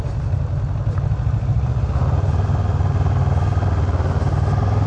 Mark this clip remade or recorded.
recorded